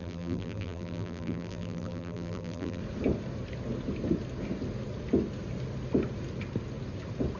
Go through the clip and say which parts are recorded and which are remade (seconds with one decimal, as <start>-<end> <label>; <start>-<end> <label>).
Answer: 0.0-2.8 remade; 2.8-7.4 recorded